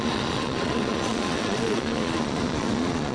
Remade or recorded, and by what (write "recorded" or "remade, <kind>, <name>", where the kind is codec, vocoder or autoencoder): remade, vocoder, Vocos